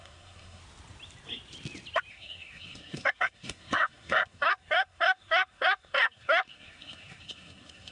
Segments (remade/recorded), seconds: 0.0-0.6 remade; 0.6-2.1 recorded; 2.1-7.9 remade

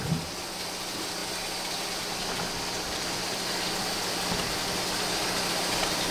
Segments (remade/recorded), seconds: 0.0-6.1 recorded

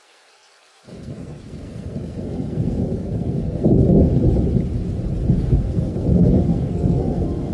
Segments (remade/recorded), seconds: 0.0-4.1 remade; 4.1-5.3 recorded; 5.3-7.5 remade

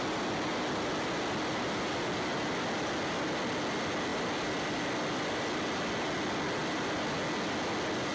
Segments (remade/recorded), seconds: 0.0-8.1 recorded